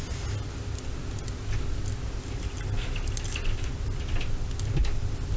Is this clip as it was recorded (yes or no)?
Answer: yes